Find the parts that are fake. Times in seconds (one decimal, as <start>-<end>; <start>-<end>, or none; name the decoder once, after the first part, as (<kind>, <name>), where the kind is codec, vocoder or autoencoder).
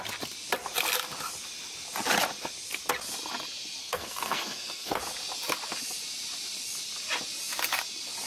3.8-5.0 (codec, SNAC)